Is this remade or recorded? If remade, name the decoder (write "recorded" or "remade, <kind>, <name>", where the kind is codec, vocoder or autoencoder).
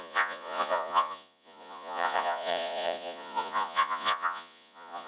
remade, vocoder, Vocos